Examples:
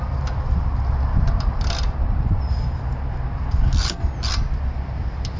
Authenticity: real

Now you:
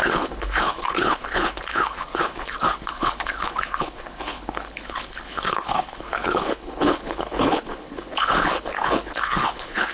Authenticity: fake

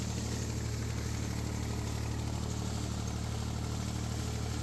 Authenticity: real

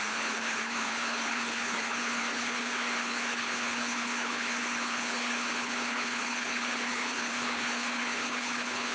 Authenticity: fake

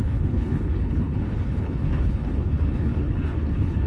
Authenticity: fake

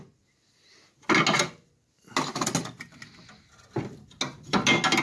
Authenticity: real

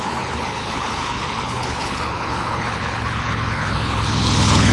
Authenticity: fake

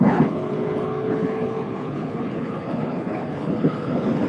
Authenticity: fake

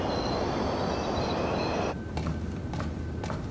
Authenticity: real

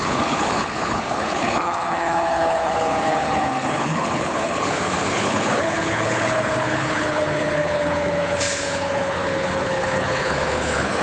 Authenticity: fake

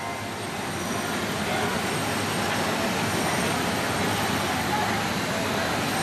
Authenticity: real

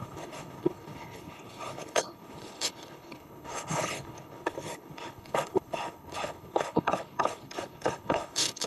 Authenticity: fake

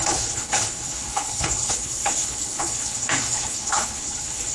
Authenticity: fake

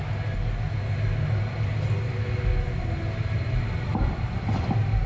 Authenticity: real